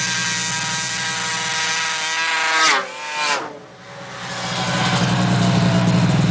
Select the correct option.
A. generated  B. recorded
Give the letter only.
B